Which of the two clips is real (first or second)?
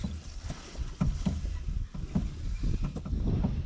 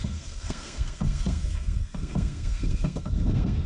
first